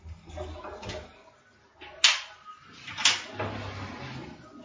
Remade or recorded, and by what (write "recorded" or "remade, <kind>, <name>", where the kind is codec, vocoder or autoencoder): recorded